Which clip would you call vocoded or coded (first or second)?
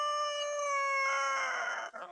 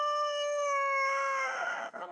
second